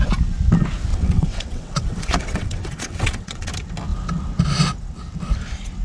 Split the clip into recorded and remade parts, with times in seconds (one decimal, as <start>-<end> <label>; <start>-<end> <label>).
0.0-0.9 recorded; 0.9-3.5 remade; 3.5-5.8 recorded